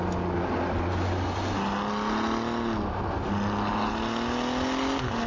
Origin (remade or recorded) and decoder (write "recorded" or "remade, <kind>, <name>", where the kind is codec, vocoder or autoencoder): recorded